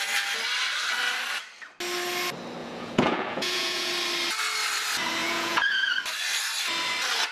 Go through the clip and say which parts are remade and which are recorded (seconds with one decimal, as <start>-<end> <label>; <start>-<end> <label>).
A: 0.0-2.6 recorded; 2.6-3.9 remade; 3.9-5.2 recorded; 5.2-5.9 remade; 5.9-7.3 recorded